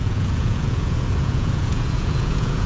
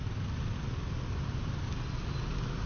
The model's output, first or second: first